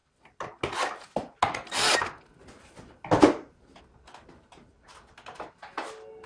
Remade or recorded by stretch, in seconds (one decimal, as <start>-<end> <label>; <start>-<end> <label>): 0.0-6.3 recorded